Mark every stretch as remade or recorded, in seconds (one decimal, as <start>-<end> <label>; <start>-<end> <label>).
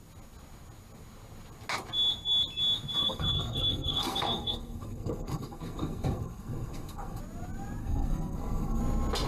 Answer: 0.0-3.0 recorded; 3.0-7.2 remade; 7.2-7.8 recorded; 7.8-8.8 remade; 8.8-9.3 recorded